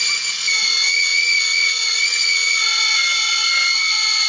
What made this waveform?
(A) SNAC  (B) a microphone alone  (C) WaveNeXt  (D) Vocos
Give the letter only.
C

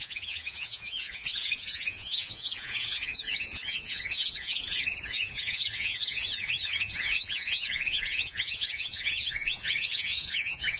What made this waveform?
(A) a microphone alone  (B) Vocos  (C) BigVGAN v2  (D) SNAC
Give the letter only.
B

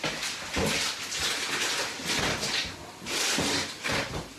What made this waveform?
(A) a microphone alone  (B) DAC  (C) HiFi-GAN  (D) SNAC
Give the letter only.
A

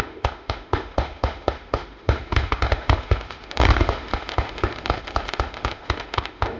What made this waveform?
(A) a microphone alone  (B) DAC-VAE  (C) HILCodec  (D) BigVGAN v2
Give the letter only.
B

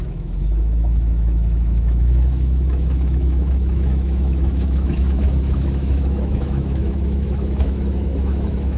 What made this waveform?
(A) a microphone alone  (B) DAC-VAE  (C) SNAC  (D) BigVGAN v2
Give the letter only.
B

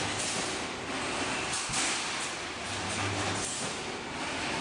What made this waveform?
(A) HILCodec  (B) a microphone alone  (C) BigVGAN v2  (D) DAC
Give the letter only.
B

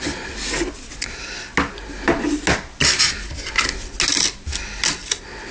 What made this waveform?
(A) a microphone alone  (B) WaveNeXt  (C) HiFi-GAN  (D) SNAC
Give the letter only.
A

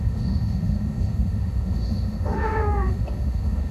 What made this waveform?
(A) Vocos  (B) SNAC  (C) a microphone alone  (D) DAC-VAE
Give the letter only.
D